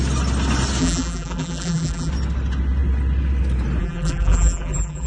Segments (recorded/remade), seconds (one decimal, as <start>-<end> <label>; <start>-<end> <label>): 0.0-0.8 recorded; 0.8-2.1 remade; 2.1-3.8 recorded; 3.8-5.1 remade